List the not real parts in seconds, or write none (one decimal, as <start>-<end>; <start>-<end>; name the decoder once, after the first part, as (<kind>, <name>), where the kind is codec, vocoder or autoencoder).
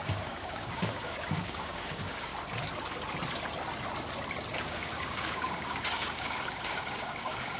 0.0-2.3 (codec, DAC); 4.6-7.6